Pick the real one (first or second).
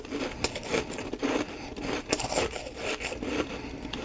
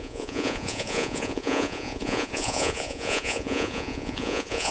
first